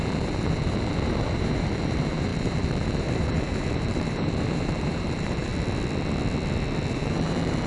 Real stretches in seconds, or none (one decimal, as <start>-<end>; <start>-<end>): 5.5-6.9